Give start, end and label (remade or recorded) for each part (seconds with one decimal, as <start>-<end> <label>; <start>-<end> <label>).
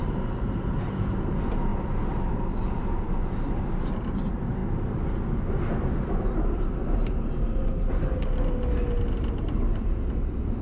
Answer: 0.0-1.7 recorded; 1.7-3.2 remade; 3.2-10.6 recorded